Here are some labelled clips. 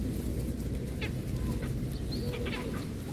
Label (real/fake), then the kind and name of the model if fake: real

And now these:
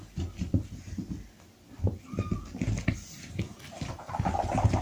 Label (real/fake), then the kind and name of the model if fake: real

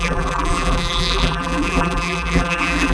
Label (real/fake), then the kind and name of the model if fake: fake, vocoder, BigVGAN v2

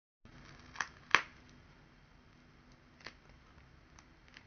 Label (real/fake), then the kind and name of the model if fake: real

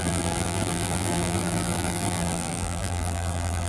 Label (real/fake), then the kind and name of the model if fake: fake, vocoder, BigVGAN v2